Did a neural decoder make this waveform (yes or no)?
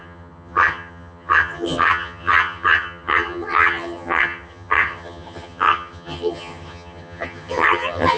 yes